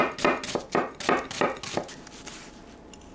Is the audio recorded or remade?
recorded